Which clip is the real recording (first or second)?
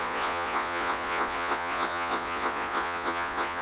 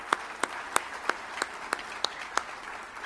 second